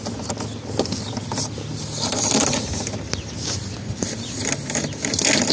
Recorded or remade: recorded